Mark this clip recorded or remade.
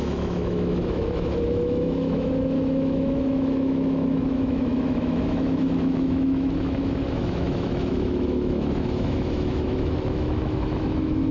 remade